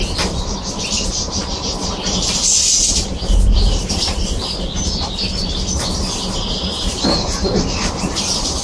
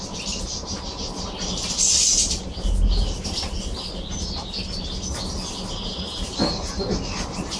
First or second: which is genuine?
second